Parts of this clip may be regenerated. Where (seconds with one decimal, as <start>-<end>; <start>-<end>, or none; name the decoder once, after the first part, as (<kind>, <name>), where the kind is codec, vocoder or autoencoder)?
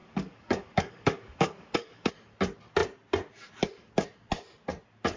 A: 0.0-2.1 (codec, DAC)